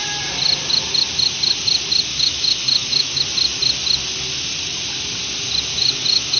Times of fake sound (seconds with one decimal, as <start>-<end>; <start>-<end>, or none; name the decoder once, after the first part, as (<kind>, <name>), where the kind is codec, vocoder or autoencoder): 2.1-3.2 (autoencoder, DAC-VAE); 5.7-6.4